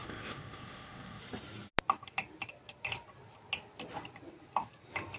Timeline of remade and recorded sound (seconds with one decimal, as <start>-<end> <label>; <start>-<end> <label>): 0.0-1.2 remade; 1.2-5.2 recorded